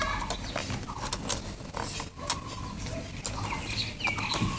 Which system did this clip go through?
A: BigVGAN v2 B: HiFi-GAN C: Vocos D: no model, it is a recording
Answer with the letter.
D